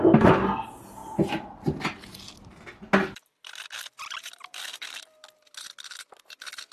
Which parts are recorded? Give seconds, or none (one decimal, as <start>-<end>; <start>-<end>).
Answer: 0.0-6.7